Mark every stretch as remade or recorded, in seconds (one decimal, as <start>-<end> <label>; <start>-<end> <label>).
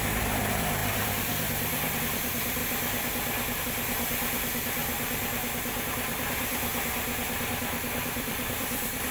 0.0-2.6 remade; 2.6-3.6 recorded; 3.6-4.8 remade; 4.8-5.9 recorded; 5.9-9.1 remade